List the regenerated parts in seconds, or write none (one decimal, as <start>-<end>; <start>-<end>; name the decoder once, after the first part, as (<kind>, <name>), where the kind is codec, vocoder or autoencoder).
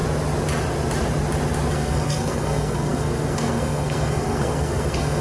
1.7-5.2 (codec, SNAC)